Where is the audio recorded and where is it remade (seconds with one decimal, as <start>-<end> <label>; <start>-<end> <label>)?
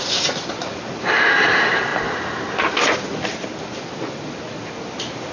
0.0-5.3 recorded